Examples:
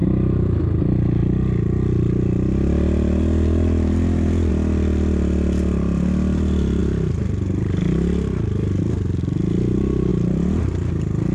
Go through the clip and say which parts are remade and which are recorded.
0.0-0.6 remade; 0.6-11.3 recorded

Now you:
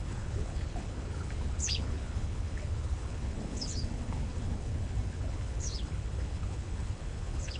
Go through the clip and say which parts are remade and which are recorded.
0.0-7.6 remade

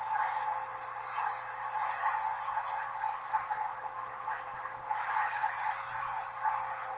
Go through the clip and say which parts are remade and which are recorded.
0.0-7.0 recorded

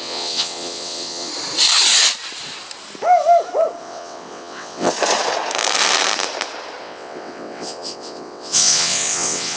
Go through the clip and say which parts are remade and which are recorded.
0.0-1.3 remade; 1.3-3.8 recorded; 3.8-4.9 remade; 4.9-6.8 recorded; 6.8-9.6 remade

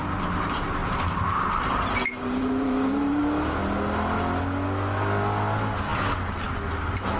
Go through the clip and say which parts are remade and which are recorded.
0.0-0.8 recorded; 0.8-3.2 remade; 3.2-7.2 recorded